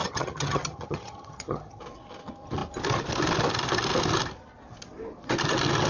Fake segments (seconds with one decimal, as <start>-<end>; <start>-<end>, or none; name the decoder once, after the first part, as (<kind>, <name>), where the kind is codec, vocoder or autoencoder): 0.0-1.8 (vocoder, HiFi-GAN)